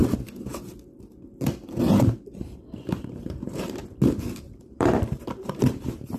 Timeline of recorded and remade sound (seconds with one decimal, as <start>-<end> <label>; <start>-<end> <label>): 0.0-1.5 recorded; 1.5-3.8 remade; 3.8-4.4 recorded; 4.4-6.2 remade